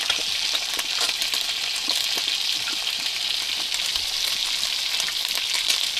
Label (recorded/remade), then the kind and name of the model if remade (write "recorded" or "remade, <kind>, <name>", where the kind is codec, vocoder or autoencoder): recorded